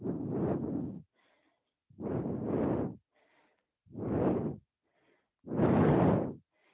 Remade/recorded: recorded